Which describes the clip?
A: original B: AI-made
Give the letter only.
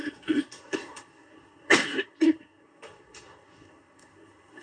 B